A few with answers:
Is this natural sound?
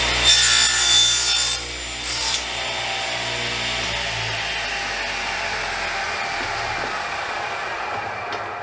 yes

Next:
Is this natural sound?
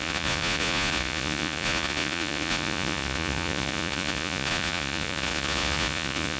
no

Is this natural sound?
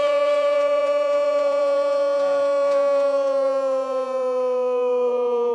no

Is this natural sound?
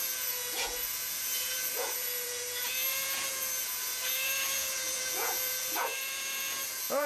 no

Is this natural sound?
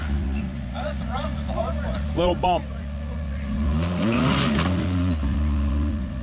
no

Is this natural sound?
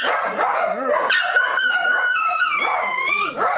no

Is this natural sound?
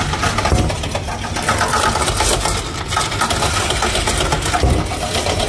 yes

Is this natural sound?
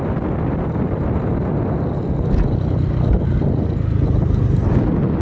yes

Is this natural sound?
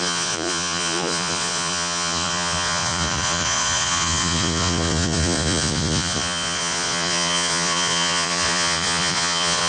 no